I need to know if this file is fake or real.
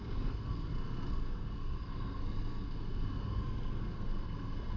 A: fake